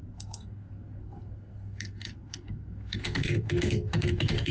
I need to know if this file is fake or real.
fake